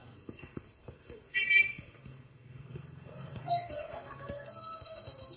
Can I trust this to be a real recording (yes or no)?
no